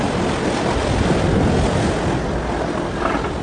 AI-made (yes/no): no